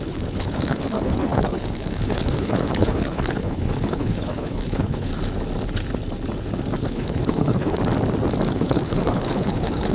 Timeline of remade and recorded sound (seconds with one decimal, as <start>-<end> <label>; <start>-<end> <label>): 0.0-5.1 remade; 5.1-6.8 recorded; 6.8-7.8 remade; 7.8-8.5 recorded; 8.5-9.9 remade